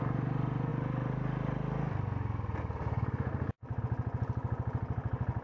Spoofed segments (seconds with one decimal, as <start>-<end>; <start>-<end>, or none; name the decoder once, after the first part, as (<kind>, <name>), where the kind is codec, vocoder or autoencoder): none